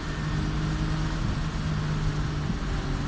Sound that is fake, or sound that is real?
real